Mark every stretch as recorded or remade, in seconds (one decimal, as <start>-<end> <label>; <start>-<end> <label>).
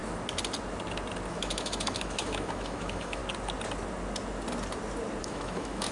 0.0-1.3 recorded; 1.3-3.2 remade; 3.2-5.2 recorded; 5.2-5.9 remade